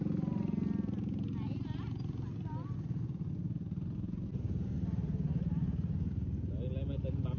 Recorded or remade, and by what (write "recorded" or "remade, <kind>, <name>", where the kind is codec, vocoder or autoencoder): recorded